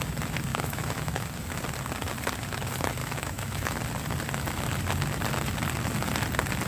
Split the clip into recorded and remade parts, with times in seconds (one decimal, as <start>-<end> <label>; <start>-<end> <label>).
0.0-0.5 recorded; 0.5-1.3 remade; 1.3-3.0 recorded; 3.0-3.8 remade; 3.8-6.7 recorded